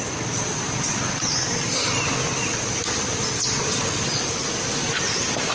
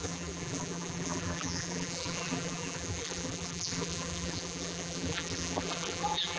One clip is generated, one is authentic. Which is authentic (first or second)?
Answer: first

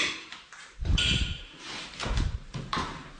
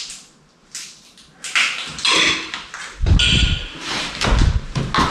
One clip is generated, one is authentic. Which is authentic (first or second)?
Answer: second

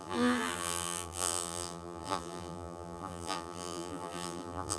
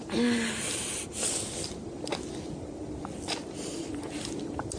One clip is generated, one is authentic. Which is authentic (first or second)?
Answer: second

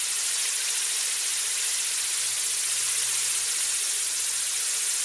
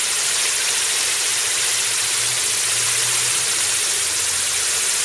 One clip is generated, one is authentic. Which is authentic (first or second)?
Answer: first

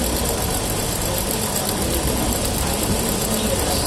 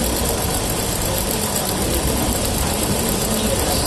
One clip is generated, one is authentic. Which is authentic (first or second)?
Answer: first